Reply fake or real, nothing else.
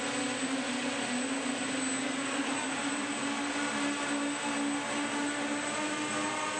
real